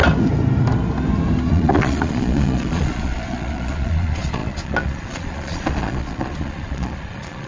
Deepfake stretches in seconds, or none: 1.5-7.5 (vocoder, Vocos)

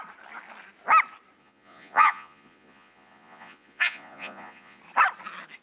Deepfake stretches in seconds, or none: 1.4-4.8 (vocoder, Vocos)

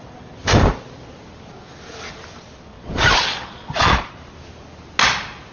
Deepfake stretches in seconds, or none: 2.7-4.1 (vocoder, Vocos)

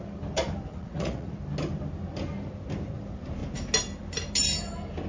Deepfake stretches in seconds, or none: 0.7-1.3 (vocoder, Vocos)

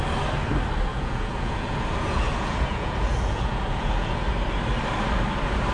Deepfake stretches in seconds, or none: 0.9-4.2 (vocoder, Vocos)

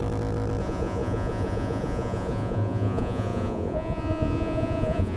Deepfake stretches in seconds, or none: 0.6-5.2 (vocoder, Vocos)

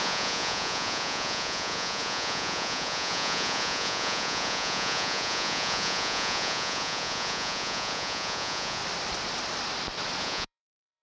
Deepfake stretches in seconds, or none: 0.0-8.8 (vocoder, Vocos); 10.2-11.0